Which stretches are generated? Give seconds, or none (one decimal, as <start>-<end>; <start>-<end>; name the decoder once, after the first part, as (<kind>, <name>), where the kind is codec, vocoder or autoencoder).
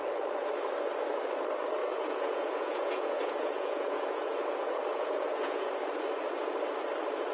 1.8-5.7 (vocoder, Vocos)